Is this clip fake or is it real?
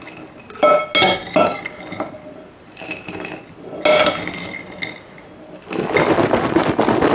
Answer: real